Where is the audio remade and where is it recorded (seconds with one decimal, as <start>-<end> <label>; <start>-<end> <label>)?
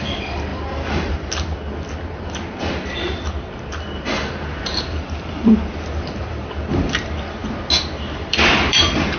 0.0-0.5 remade; 0.5-4.3 recorded; 4.3-7.4 remade; 7.4-7.9 recorded; 7.9-9.2 remade